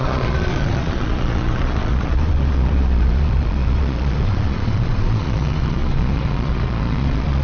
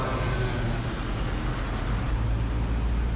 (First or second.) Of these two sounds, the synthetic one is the first